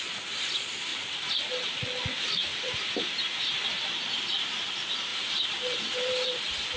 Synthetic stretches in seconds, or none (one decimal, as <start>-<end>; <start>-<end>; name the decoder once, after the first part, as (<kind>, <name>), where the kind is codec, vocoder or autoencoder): 2.5-4.2 (vocoder, BigVGAN v2); 5.1-6.3